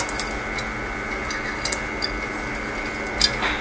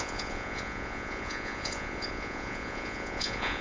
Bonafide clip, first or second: first